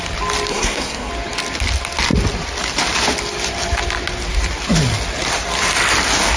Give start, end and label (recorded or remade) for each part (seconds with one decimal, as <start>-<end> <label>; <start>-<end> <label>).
0.0-0.5 recorded; 0.5-1.1 remade; 1.1-6.4 recorded